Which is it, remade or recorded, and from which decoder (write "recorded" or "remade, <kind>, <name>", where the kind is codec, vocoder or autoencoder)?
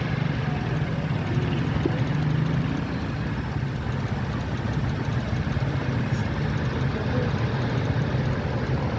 recorded